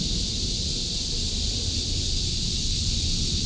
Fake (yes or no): no